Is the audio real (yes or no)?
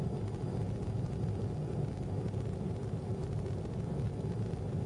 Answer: yes